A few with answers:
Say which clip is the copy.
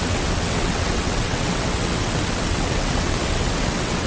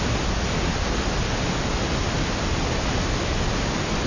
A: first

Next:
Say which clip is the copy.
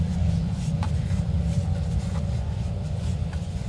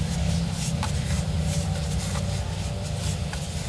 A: first